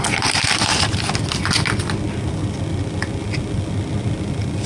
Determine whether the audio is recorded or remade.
recorded